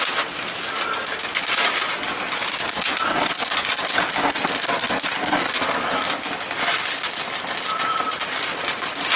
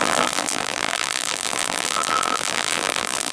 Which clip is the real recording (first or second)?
first